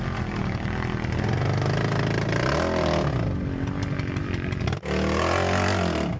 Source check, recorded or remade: recorded